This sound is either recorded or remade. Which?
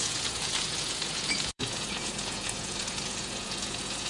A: remade